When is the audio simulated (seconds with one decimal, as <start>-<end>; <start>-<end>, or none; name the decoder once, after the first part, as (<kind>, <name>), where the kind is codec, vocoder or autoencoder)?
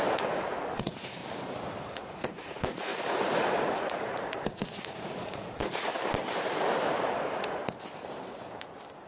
0.0-1.2 (vocoder, Vocos); 1.8-5.9; 7.0-7.6